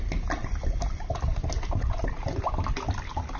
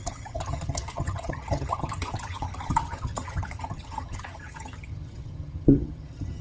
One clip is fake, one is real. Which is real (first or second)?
first